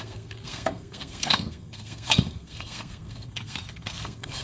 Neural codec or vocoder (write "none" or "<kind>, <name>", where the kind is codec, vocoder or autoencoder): codec, SNAC